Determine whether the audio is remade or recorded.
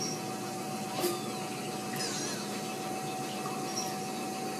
recorded